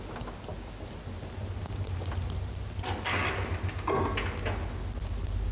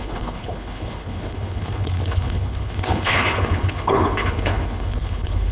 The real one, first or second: first